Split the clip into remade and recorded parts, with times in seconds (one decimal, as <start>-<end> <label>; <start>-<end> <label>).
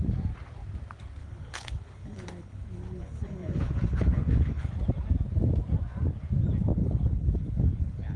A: 0.0-1.2 recorded; 1.2-4.7 remade; 4.7-6.8 recorded; 6.8-8.2 remade